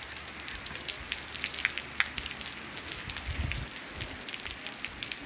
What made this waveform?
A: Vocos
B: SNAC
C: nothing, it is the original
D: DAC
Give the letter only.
C